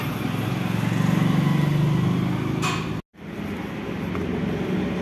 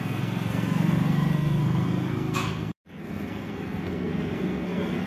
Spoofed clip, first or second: second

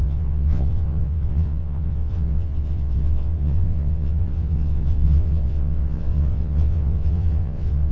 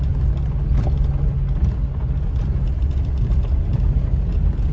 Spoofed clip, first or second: first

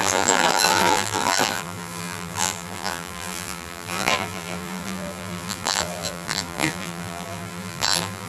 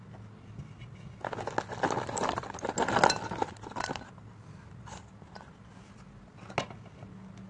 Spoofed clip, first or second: first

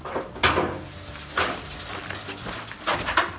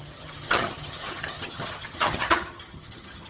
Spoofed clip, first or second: second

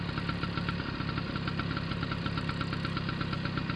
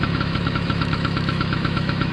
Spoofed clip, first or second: second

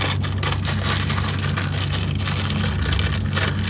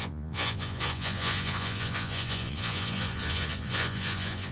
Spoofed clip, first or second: second